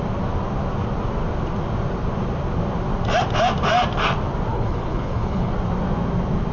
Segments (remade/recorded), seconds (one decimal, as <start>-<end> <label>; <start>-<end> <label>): 0.0-4.5 recorded; 4.5-5.5 remade; 5.5-6.5 recorded